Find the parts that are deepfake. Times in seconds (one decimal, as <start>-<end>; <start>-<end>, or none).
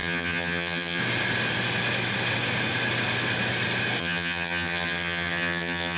0.0-1.0; 4.0-6.0